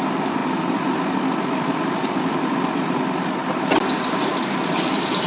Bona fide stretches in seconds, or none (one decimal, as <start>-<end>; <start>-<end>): 3.4-4.1

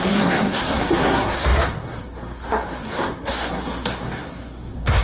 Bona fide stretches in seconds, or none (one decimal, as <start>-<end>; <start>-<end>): none

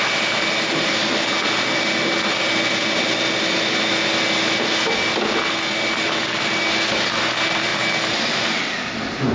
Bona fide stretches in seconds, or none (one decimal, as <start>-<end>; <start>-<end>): 0.0-9.3

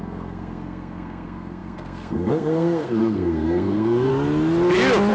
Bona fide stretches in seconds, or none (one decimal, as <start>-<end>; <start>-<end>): 4.1-5.1

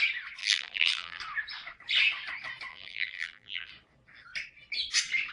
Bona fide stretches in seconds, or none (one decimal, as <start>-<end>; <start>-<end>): 0.0-0.4; 1.2-2.7; 3.7-5.3

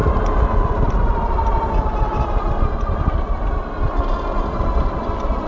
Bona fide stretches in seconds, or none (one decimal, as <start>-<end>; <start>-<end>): 0.0-3.3

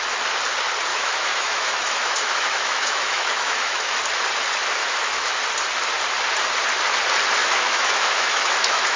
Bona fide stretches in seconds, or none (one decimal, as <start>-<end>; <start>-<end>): 0.0-0.9; 4.0-4.8; 5.4-7.4